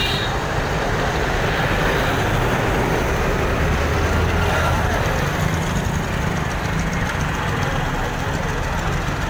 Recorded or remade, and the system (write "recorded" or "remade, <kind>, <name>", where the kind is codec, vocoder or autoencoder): recorded